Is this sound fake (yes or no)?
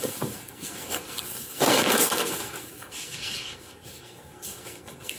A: yes